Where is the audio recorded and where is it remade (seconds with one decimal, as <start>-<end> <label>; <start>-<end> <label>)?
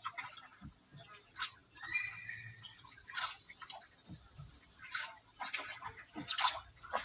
0.0-7.0 recorded